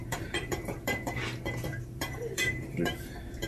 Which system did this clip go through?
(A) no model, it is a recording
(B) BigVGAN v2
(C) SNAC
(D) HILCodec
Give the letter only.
B